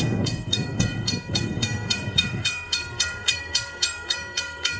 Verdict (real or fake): fake